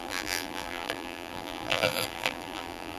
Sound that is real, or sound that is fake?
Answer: fake